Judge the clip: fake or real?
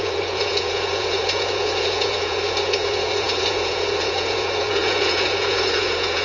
fake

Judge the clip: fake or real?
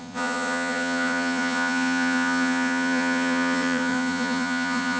fake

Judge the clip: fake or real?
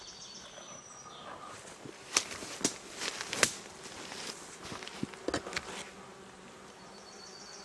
real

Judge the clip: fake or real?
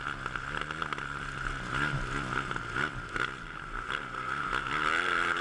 real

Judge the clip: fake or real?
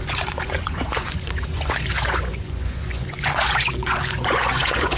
fake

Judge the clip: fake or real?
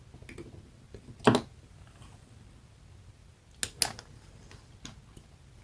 real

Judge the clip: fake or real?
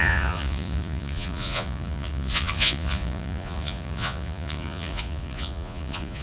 fake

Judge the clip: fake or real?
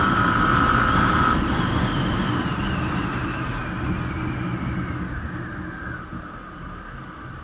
real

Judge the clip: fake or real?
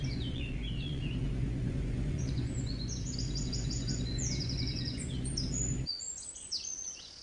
fake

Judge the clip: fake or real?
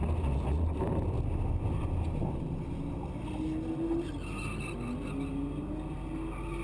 real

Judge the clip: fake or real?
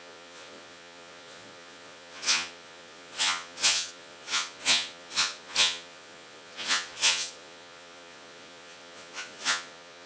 fake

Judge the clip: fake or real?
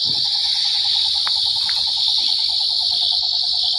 real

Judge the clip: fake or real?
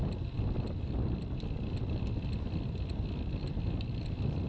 real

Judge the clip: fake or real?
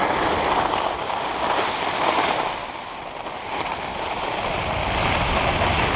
real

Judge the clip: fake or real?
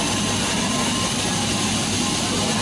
real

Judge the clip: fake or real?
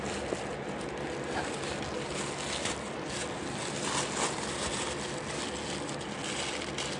real